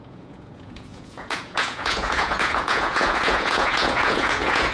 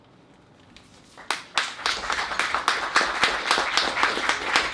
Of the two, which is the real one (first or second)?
second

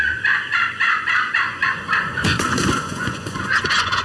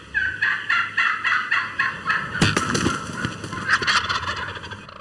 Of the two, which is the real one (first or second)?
second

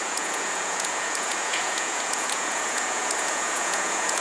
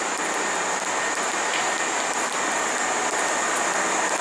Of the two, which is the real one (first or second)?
second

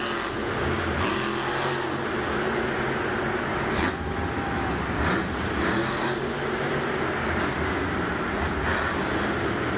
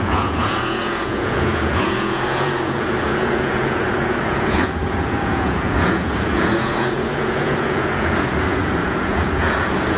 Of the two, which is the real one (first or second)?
first